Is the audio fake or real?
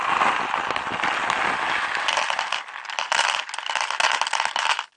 real